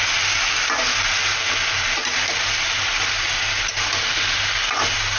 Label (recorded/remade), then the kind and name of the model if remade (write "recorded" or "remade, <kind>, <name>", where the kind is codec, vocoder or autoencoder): recorded